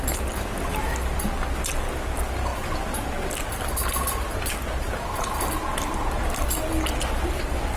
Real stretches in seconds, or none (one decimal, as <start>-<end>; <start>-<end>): 0.0-7.8